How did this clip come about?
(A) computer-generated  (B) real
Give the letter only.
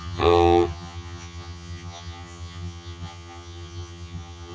A